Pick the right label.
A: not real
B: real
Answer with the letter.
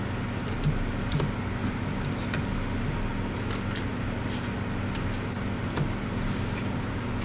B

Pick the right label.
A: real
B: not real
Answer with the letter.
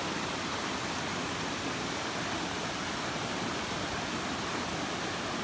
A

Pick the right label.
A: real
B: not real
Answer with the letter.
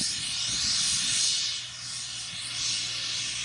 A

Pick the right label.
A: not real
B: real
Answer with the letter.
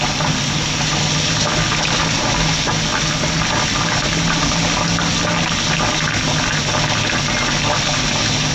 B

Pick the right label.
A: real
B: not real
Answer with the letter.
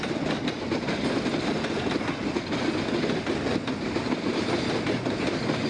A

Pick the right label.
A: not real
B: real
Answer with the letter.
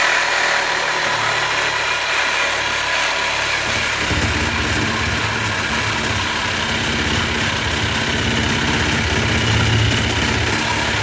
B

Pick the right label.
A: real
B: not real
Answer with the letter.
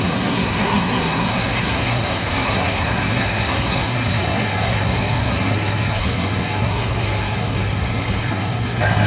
B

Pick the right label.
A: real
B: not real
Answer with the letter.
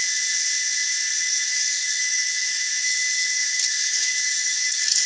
B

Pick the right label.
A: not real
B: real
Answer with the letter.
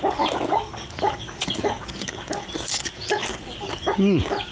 A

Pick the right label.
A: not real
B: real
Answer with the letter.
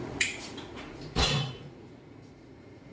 A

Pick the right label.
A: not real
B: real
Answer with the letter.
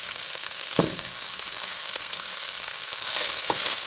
A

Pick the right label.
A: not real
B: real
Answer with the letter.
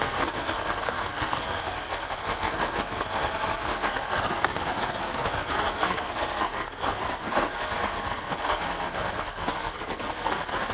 A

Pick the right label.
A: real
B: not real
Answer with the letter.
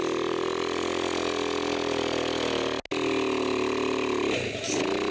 A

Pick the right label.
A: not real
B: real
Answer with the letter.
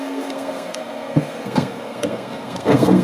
A